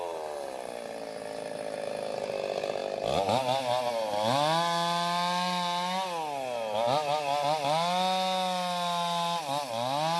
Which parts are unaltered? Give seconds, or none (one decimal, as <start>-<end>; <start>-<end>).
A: 0.0-10.2